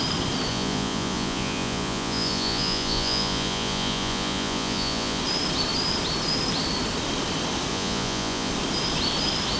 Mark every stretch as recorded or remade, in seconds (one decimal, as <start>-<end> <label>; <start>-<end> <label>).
0.0-0.5 recorded; 0.5-5.2 remade; 5.2-7.7 recorded; 7.7-8.5 remade; 8.5-9.6 recorded